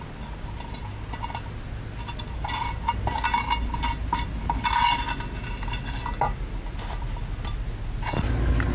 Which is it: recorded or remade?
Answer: recorded